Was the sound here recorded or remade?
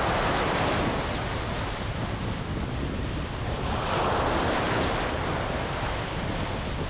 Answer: recorded